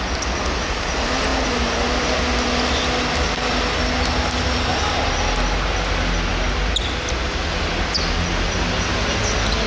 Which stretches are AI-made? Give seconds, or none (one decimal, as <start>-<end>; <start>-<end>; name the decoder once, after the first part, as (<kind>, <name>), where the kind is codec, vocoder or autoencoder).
none